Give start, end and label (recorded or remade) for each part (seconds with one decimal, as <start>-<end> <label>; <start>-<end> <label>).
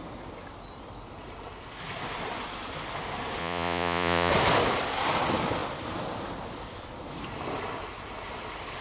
0.0-3.4 recorded; 3.4-4.3 remade; 4.3-8.8 recorded